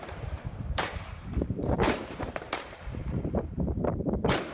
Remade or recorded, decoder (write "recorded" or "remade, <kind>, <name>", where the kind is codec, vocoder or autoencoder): remade, vocoder, BigVGAN v2